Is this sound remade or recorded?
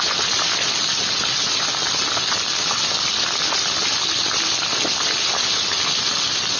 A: recorded